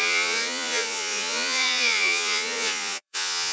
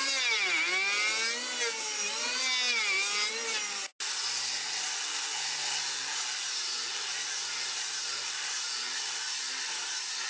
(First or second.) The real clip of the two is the second